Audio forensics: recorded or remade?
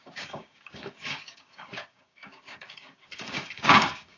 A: remade